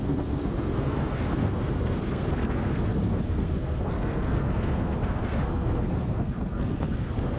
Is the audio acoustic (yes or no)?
no